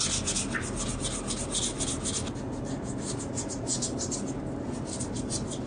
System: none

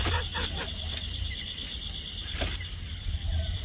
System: none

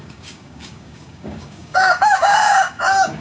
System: codec, DAC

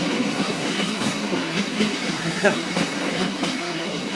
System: codec, SNAC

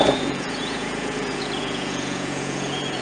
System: vocoder, Vocos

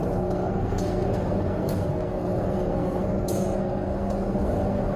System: codec, SNAC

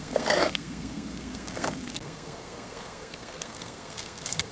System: codec, SNAC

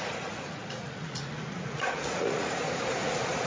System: vocoder, Vocos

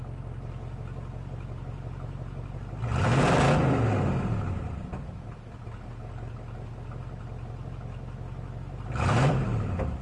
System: none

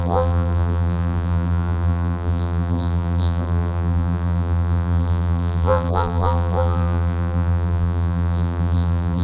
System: vocoder, BigVGAN v2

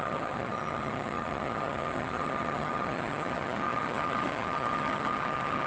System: vocoder, HiFi-GAN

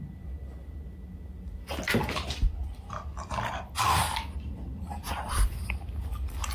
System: none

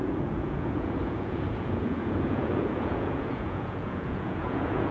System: vocoder, Vocos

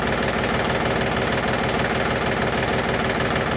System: none